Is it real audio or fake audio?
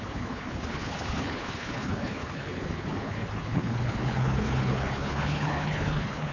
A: fake